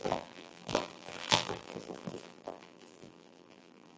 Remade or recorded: remade